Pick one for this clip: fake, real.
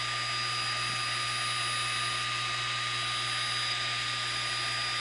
real